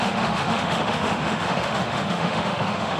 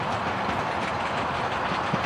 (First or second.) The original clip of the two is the second